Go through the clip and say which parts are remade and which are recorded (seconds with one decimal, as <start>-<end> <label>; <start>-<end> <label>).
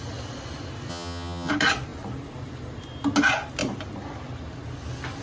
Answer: 0.0-0.9 recorded; 0.9-1.5 remade; 1.5-5.2 recorded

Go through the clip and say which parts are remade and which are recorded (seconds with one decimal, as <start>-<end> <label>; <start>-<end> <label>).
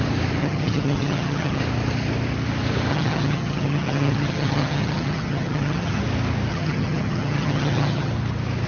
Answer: 0.0-0.4 recorded; 0.4-1.6 remade; 1.6-2.9 recorded; 2.9-6.0 remade; 6.0-6.5 recorded; 6.5-8.1 remade; 8.1-8.7 recorded